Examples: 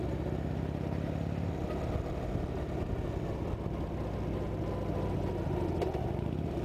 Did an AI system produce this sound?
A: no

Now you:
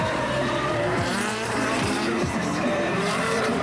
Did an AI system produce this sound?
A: yes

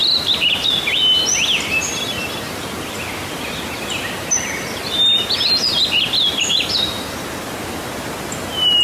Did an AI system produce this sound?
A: no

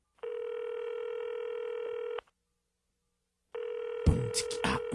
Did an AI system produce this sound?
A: no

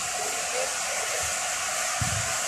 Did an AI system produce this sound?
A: no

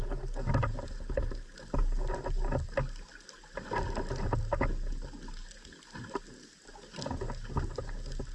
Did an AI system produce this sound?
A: no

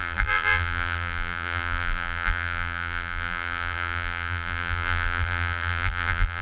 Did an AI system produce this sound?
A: yes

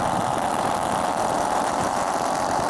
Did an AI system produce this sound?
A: yes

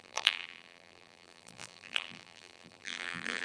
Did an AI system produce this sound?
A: yes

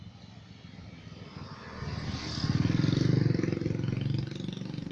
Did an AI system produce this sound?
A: no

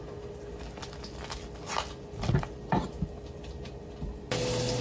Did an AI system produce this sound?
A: no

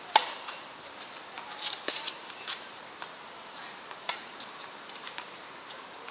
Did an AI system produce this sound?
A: yes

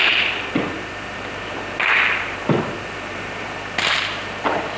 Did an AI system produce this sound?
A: yes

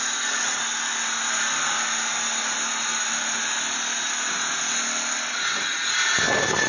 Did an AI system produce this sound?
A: no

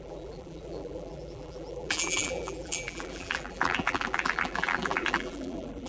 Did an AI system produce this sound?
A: yes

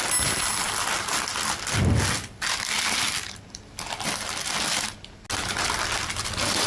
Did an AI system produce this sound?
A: no